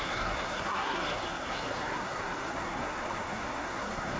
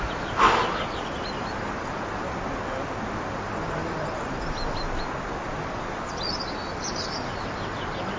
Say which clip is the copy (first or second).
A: first